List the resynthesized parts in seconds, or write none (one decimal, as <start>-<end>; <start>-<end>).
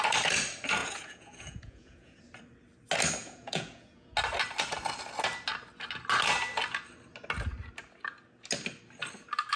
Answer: 0.8-2.2; 3.2-4.1